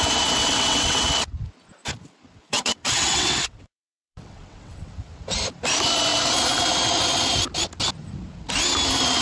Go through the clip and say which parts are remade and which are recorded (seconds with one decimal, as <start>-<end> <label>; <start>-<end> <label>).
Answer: 0.0-0.4 recorded; 0.4-1.1 remade; 1.1-2.4 recorded; 2.4-4.9 remade; 4.9-9.2 recorded